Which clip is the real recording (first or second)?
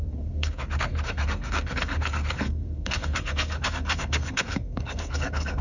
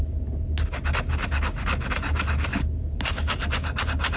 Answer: second